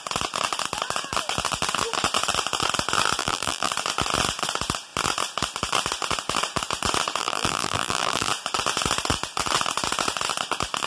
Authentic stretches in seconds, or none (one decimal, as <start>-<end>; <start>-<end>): 0.0-3.2; 3.7-7.2; 8.3-10.9